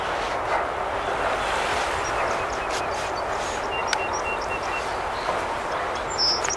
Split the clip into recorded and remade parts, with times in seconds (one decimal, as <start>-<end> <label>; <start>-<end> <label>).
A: 0.0-1.7 recorded; 1.7-2.8 remade; 2.8-6.6 recorded